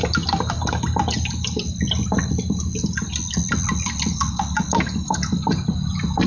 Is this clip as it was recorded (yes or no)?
yes